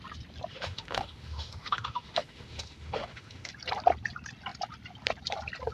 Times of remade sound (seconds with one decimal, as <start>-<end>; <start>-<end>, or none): 0.5-3.5